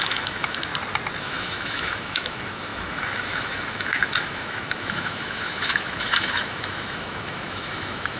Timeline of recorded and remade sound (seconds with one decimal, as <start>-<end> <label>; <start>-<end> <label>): 0.0-0.7 remade; 0.7-1.2 recorded; 1.2-8.2 remade